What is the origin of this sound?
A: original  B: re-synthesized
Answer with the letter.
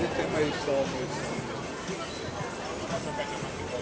A